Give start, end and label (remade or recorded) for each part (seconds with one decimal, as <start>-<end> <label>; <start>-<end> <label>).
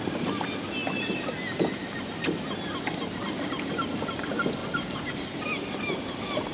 0.0-4.6 recorded; 4.6-5.1 remade; 5.1-6.5 recorded